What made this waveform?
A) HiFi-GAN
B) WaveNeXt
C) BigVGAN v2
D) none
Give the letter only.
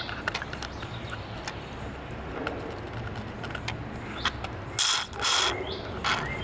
D